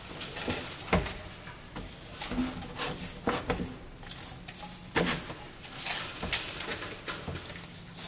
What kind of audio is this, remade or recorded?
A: recorded